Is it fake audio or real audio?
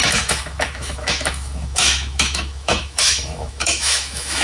fake